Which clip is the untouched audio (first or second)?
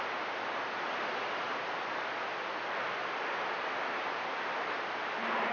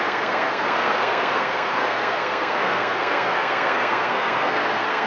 first